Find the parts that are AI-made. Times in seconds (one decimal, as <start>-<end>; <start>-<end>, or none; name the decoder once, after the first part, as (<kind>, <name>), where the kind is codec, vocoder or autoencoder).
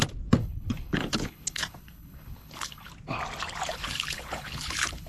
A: 0.4-2.9 (codec, HILCodec); 3.7-5.1